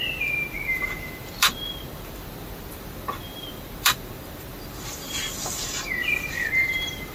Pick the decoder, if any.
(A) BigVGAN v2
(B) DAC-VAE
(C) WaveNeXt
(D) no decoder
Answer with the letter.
A